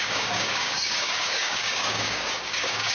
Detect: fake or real fake